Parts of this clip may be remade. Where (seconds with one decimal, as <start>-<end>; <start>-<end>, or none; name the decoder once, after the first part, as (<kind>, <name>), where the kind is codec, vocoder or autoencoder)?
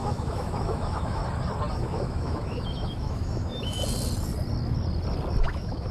0.0-1.2 (autoencoder, DAC-VAE); 1.7-3.8; 5.4-5.9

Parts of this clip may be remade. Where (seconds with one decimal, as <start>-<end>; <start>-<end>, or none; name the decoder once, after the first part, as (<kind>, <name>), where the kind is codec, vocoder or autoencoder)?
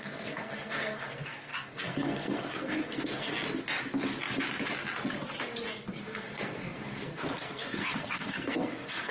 0.0-3.3 (codec, SNAC); 6.0-9.1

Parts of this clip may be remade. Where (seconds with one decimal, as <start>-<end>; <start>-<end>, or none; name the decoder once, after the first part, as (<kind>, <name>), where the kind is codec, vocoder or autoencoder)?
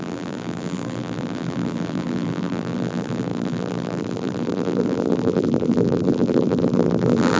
0.0-7.4 (vocoder, BigVGAN v2)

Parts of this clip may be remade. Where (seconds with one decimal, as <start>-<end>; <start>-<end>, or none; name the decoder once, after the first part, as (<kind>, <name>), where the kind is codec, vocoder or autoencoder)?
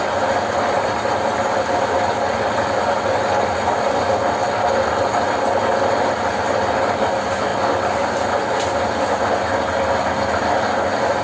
none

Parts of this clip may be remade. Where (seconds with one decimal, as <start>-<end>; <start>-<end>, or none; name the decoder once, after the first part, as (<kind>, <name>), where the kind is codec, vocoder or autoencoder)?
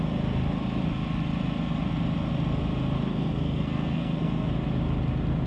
3.1-4.5 (codec, SNAC)